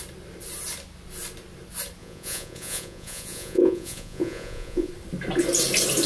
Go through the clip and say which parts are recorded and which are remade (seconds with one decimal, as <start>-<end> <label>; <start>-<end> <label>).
0.0-2.0 recorded; 2.0-4.9 remade; 4.9-6.1 recorded